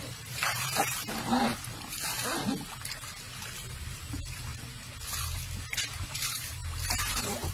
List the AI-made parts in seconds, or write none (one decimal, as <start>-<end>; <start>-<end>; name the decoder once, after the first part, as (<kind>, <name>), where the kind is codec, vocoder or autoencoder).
0.0-1.5 (vocoder, BigVGAN v2); 3.9-4.5; 6.0-6.6; 7.1-7.5